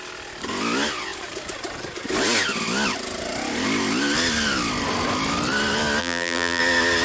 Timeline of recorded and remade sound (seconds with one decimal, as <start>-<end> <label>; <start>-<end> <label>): 0.0-6.0 recorded; 6.0-6.6 remade; 6.6-7.0 recorded